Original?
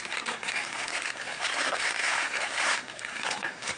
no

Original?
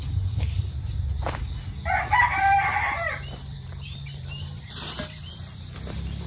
no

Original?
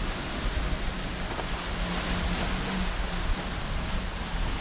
yes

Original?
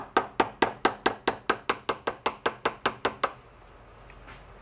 yes